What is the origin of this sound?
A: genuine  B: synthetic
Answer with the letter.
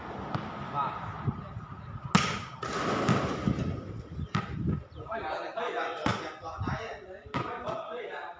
A